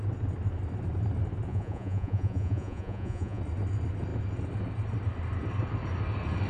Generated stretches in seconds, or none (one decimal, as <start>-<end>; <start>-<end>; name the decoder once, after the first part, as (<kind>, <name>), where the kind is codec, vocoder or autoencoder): 1.5-3.4 (vocoder, Vocos)